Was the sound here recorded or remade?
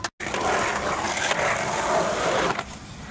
recorded